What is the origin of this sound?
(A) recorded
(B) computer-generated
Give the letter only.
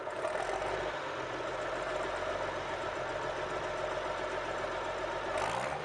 A